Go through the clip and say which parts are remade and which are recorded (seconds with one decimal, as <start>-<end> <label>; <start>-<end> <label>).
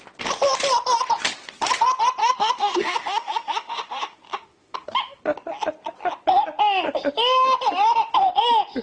0.0-2.2 recorded; 2.2-5.2 remade; 5.2-8.8 recorded